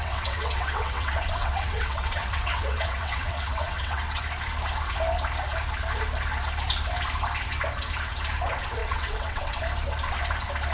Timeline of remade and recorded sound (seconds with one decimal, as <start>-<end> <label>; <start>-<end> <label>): 0.0-4.0 remade; 4.0-8.8 recorded; 8.8-9.6 remade; 9.6-10.7 recorded